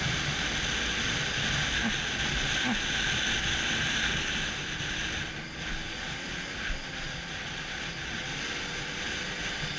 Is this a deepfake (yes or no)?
no